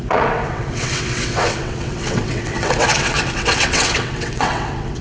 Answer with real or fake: fake